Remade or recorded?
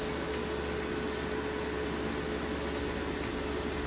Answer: recorded